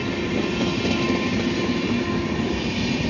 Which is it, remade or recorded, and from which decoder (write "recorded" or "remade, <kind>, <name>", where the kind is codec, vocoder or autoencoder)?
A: recorded